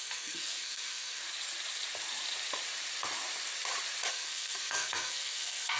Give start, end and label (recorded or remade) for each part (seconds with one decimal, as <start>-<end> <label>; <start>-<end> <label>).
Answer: 0.0-1.2 remade; 1.2-4.1 recorded; 4.1-5.8 remade